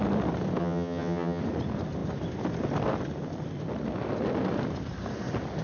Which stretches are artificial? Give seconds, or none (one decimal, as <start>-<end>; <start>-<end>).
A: 0.6-1.4